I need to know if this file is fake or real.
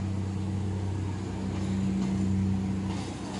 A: real